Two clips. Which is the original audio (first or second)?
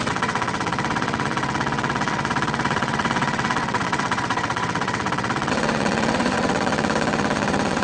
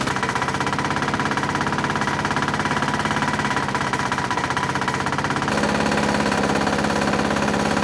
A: second